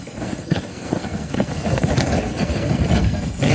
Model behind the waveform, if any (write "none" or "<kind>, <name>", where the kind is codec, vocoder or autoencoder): codec, SNAC